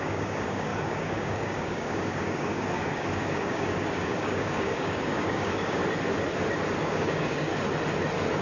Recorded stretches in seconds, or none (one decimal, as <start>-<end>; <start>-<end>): 5.8-6.8; 7.5-8.4